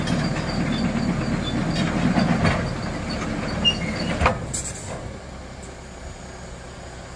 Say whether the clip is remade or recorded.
recorded